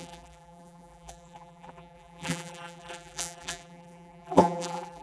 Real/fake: fake